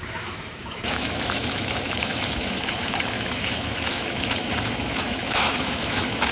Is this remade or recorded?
remade